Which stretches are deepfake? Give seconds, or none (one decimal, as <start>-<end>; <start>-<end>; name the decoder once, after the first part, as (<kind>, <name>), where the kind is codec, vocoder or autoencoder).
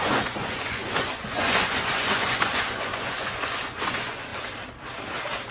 0.0-4.3 (vocoder, Vocos)